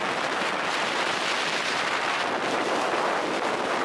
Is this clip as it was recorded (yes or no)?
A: yes